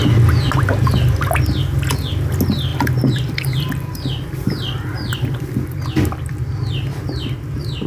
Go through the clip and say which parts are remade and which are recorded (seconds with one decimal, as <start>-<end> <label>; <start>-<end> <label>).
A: 0.0-0.7 remade; 0.7-2.7 recorded; 2.7-6.7 remade; 6.7-7.9 recorded